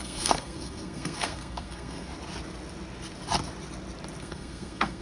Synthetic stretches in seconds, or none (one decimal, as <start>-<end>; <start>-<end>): 0.0-2.1; 4.2-5.0